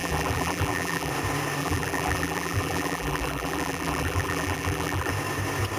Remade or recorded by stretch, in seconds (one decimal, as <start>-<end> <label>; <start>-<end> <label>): 0.0-1.1 remade; 1.1-1.6 recorded; 1.6-5.1 remade; 5.1-5.8 recorded